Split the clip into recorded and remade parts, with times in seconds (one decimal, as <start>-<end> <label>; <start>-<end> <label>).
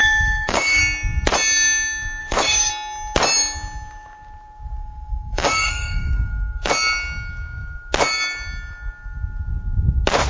0.0-0.8 remade; 0.8-2.2 recorded; 2.2-2.7 remade; 2.7-4.8 recorded; 4.8-6.7 remade; 6.7-10.3 recorded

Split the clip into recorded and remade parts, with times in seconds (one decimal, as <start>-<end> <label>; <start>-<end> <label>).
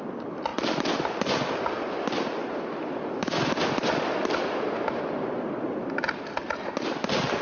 0.0-7.4 recorded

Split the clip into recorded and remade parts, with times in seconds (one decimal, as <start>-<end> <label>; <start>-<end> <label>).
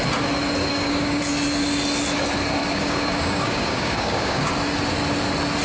0.0-0.7 recorded; 0.7-1.2 remade; 1.2-2.6 recorded; 2.6-4.5 remade; 4.5-5.6 recorded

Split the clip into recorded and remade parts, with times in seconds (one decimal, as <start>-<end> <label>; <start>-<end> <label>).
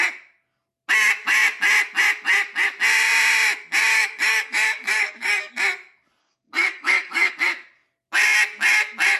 0.0-3.9 recorded; 3.9-5.5 remade; 5.5-6.2 recorded; 6.2-7.3 remade; 7.3-9.2 recorded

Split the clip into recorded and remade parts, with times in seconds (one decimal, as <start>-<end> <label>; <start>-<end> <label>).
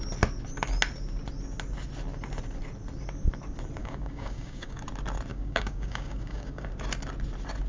0.0-3.8 recorded; 3.8-4.8 remade; 4.8-5.3 recorded; 5.3-6.7 remade; 6.7-7.7 recorded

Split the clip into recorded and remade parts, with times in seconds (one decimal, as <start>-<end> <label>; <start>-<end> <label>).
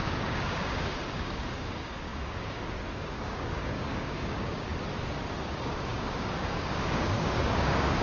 0.0-4.7 remade; 4.7-5.2 recorded; 5.2-8.0 remade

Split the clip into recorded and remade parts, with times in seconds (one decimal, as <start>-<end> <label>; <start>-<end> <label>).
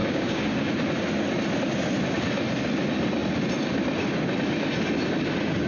0.0-0.7 remade; 0.7-5.7 recorded